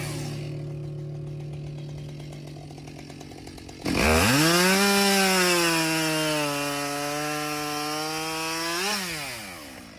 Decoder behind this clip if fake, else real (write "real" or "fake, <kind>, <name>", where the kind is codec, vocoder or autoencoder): real